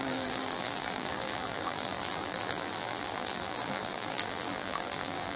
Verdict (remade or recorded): remade